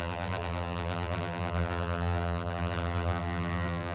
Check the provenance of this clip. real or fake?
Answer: fake